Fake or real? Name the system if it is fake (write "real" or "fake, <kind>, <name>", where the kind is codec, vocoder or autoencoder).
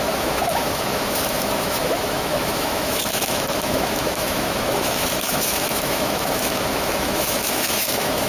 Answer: fake, autoencoder, DAC-VAE